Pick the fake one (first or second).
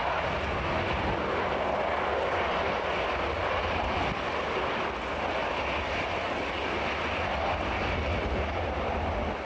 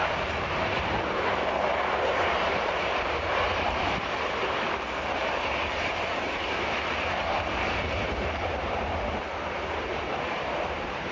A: second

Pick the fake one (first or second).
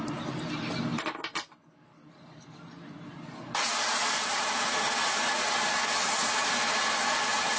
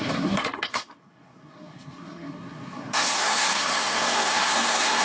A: second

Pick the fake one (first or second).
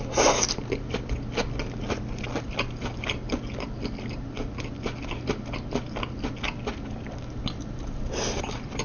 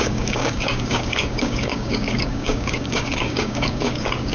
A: second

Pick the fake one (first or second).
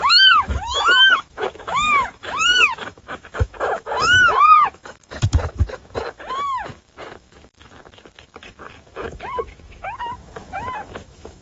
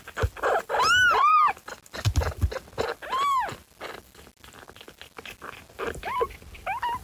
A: first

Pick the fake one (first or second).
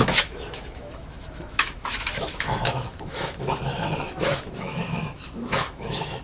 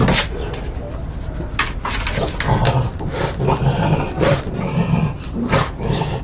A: first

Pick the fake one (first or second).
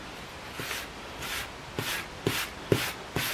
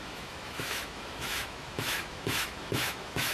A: second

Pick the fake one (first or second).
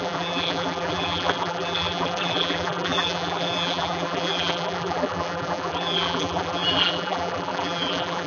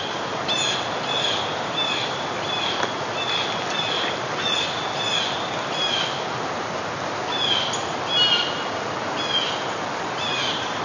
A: first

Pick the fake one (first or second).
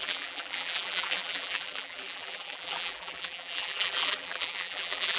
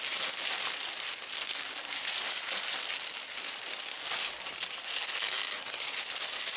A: first